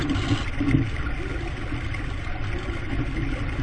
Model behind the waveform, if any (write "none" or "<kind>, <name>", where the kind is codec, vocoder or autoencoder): none